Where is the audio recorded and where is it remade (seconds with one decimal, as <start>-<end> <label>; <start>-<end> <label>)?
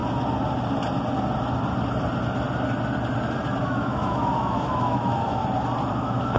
0.0-3.6 recorded; 3.6-5.4 remade; 5.4-5.9 recorded; 5.9-6.4 remade